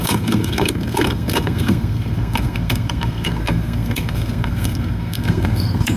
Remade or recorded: remade